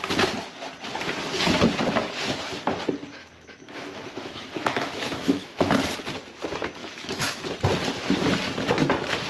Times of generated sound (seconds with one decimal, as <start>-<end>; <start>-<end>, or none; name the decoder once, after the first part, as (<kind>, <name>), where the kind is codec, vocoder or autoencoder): 3.2-5.7 (autoencoder, DAC-VAE); 6.8-7.4